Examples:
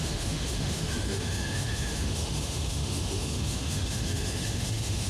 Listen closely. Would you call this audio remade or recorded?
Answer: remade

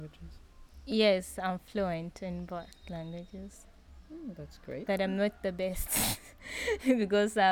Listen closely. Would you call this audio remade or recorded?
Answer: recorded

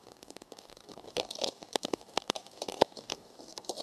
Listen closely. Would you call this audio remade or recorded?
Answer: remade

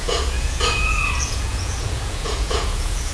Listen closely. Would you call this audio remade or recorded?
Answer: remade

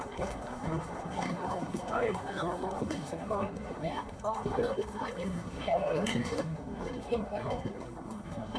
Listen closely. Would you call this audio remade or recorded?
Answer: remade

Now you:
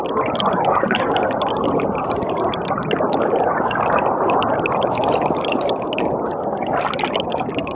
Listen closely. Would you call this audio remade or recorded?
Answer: recorded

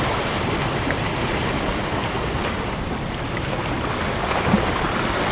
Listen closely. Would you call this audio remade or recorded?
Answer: recorded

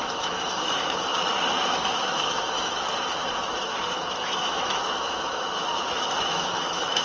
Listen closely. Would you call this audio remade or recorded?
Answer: remade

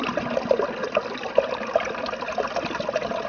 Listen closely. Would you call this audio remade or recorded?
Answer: recorded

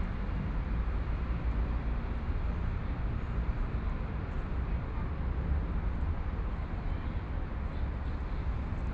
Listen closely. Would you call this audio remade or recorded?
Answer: recorded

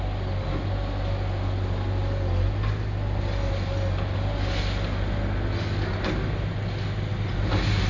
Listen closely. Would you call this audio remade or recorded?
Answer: recorded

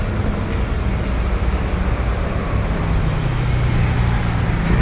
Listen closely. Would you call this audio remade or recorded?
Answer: recorded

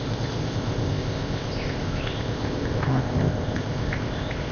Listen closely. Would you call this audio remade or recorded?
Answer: remade